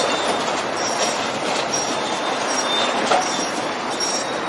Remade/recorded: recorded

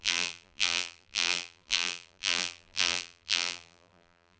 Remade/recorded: remade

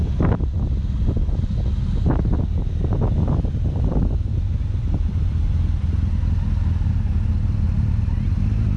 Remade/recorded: recorded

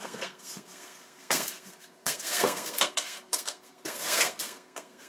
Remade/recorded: remade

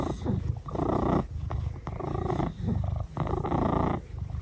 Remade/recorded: recorded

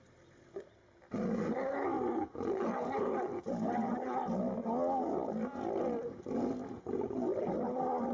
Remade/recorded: recorded